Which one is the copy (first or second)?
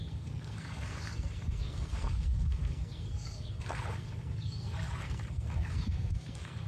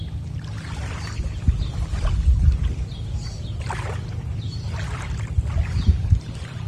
first